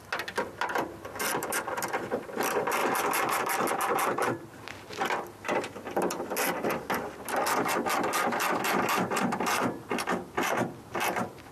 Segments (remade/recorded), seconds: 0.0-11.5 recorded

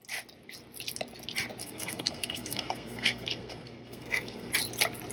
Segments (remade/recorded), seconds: 0.0-1.6 recorded; 1.6-4.5 remade; 4.5-5.1 recorded

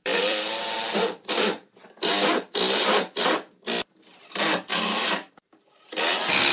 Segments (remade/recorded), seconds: 0.0-0.6 remade; 0.6-4.7 recorded; 4.7-5.3 remade; 5.3-6.5 recorded

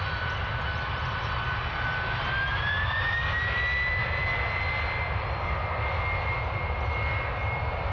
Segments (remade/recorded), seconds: 0.0-2.5 recorded; 2.5-3.4 remade; 3.4-7.9 recorded

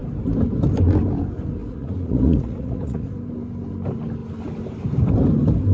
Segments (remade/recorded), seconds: 0.0-1.6 recorded; 1.6-3.1 remade; 3.1-5.7 recorded

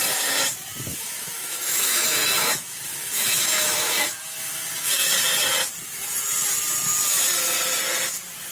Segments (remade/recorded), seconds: 0.0-0.9 recorded; 0.9-5.1 remade; 5.1-8.5 recorded

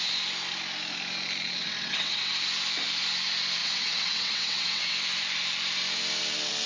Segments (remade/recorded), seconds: 0.0-1.6 recorded; 1.6-2.3 remade; 2.3-3.6 recorded; 3.6-4.9 remade; 4.9-6.7 recorded

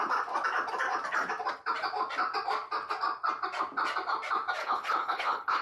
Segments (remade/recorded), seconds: 0.0-4.6 recorded; 4.6-5.6 remade